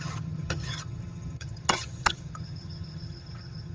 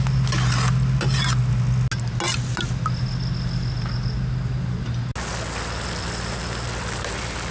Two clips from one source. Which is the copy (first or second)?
first